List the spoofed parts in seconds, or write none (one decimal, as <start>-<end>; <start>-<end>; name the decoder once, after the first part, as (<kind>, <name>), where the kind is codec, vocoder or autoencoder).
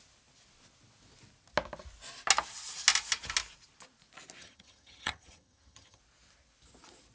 4.4-6.0 (vocoder, HiFi-GAN)